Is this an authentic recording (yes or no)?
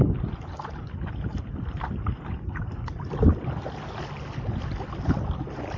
yes